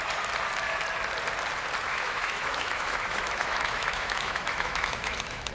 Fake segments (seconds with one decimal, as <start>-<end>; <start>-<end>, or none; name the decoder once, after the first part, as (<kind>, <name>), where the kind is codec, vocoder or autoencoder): 1.9-5.5 (autoencoder, DAC-VAE)